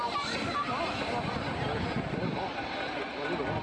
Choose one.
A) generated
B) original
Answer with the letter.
B